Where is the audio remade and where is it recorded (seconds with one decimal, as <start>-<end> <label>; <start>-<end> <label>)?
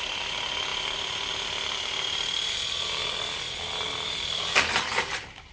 0.0-0.7 recorded; 0.7-1.3 remade; 1.3-5.5 recorded